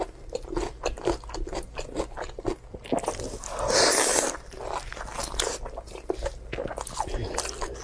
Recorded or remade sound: recorded